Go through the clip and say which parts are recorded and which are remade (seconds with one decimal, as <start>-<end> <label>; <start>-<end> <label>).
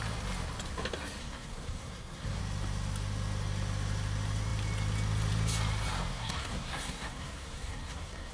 0.0-1.2 recorded; 1.2-2.4 remade; 2.4-6.1 recorded; 6.1-8.3 remade